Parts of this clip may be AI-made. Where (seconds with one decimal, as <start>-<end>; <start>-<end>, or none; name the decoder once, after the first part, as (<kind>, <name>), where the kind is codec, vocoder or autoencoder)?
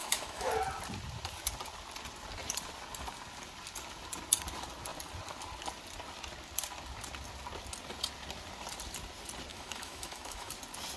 0.0-0.5 (autoencoder, DAC-VAE); 9.5-10.5